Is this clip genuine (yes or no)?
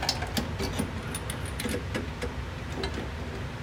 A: yes